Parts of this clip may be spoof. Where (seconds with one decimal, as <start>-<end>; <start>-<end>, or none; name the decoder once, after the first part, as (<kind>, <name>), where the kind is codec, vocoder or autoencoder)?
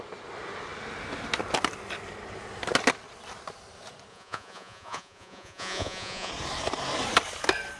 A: 4.1-6.3 (vocoder, Vocos)